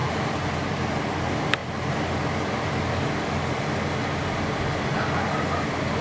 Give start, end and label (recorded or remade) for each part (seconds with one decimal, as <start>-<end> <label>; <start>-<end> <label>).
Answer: 0.0-6.0 recorded